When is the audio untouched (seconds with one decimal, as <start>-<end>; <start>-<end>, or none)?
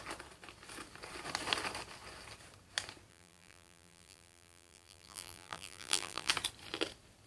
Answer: 0.0-3.1; 6.3-7.3